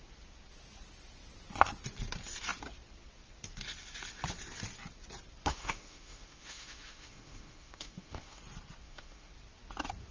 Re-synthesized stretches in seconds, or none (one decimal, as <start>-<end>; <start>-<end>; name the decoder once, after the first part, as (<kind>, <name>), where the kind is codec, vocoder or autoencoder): 5.5-8.4 (autoencoder, DAC-VAE); 8.8-9.3